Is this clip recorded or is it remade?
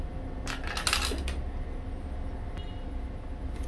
recorded